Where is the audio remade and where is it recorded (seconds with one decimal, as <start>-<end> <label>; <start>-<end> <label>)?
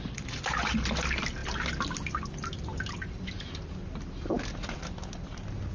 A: 0.0-5.7 recorded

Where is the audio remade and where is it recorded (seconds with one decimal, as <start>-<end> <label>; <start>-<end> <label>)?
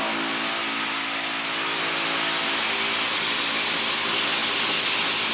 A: 0.0-5.3 recorded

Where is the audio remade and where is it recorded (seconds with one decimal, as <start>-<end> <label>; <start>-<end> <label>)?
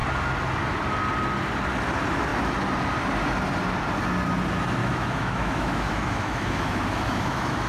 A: 0.0-4.8 recorded; 4.8-7.7 remade